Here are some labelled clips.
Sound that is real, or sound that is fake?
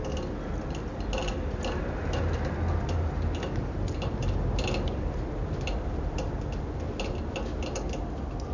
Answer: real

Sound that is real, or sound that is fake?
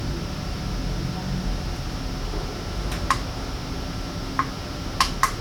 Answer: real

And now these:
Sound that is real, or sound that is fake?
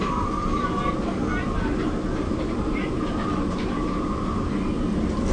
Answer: real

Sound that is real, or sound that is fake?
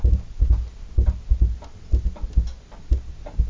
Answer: real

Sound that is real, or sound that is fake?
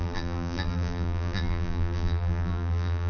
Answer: fake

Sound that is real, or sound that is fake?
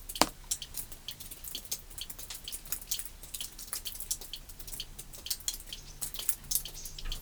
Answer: real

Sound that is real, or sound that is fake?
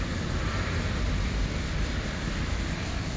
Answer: fake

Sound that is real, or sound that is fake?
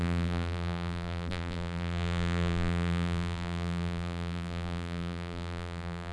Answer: fake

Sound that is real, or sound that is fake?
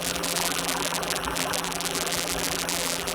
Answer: fake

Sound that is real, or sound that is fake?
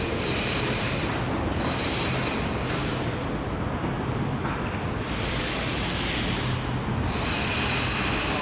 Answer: real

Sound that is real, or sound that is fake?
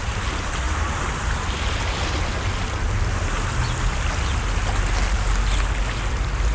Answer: real